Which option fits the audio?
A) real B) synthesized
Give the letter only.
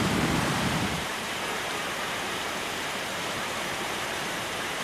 B